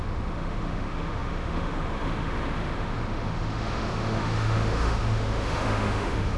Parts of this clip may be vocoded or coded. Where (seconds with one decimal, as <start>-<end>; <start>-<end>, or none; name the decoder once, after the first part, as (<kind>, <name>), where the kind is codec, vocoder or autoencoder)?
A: 0.0-6.4 (autoencoder, DAC-VAE)